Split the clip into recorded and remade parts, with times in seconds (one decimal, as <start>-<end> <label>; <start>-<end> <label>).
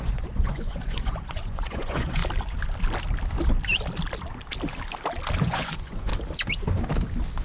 0.0-2.2 remade; 2.2-5.4 recorded; 5.4-6.1 remade; 6.1-7.4 recorded